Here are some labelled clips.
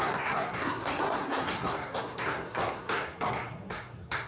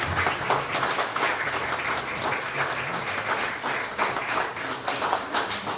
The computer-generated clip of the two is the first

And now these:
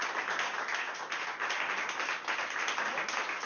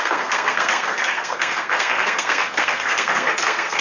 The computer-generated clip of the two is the second